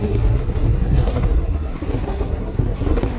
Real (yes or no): no